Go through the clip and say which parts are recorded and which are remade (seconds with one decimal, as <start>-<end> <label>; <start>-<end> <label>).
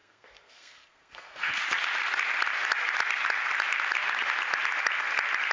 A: 0.0-1.5 remade; 1.5-5.5 recorded